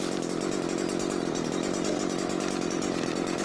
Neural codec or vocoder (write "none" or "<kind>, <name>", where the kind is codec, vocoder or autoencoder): none